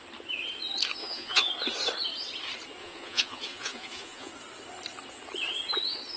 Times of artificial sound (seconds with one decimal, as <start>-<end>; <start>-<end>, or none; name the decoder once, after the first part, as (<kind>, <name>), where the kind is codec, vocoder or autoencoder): 1.0-1.5 (vocoder, Vocos); 2.8-4.3